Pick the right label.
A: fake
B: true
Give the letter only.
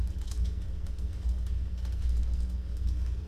A